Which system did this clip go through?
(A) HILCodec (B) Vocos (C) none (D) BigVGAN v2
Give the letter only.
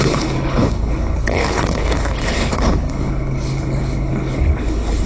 A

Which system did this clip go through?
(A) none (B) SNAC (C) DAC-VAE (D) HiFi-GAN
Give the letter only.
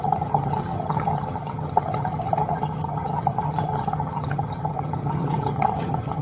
D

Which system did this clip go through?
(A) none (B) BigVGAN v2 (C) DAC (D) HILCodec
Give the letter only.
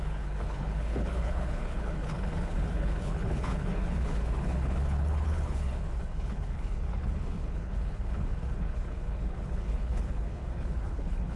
D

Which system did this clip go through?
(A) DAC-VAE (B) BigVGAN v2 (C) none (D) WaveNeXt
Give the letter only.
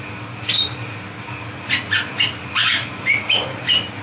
C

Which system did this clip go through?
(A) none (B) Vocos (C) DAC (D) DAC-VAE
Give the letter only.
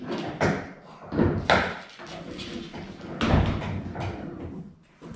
A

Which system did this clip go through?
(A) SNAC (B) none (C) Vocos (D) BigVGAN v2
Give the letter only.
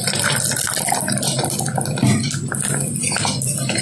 B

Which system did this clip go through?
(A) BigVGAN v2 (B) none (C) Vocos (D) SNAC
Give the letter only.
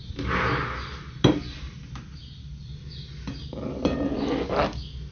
B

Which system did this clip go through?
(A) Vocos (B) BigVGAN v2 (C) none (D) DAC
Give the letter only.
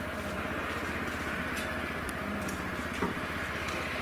C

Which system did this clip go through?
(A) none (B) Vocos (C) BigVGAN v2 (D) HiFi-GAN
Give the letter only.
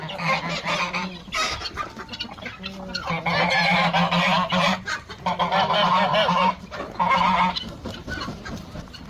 A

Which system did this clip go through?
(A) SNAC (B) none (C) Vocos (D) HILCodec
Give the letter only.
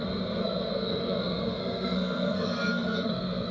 A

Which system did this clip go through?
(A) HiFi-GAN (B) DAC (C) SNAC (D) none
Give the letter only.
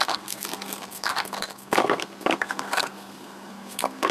C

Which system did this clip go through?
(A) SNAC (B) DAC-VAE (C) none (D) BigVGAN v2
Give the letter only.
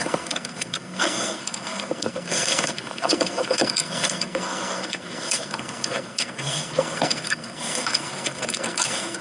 A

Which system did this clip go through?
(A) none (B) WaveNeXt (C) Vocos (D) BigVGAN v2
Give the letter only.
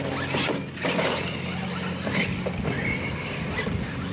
A